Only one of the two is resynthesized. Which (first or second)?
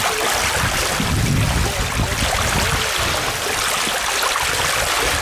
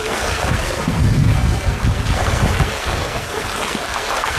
second